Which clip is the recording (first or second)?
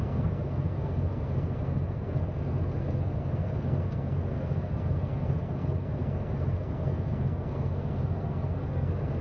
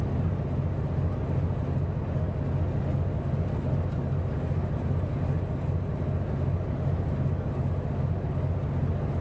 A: second